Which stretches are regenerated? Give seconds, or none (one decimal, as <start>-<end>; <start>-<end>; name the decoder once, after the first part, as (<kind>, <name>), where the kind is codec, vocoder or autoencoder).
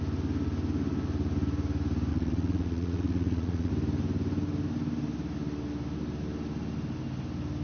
2.1-3.7 (vocoder, Vocos)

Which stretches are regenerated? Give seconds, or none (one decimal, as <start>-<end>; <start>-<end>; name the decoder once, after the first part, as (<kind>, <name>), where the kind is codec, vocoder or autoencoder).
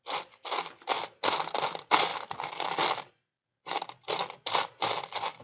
none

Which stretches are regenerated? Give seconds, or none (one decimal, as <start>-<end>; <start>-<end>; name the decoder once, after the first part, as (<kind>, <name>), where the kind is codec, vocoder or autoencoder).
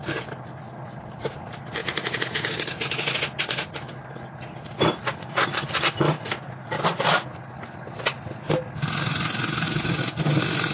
1.8-2.5 (vocoder, Vocos)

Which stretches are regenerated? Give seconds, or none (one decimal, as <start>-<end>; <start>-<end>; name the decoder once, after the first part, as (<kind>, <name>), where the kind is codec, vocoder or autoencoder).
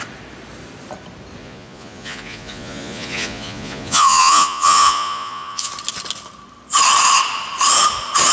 1.4-5.7 (vocoder, Vocos)